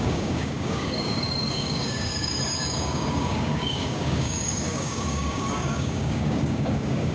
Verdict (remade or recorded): remade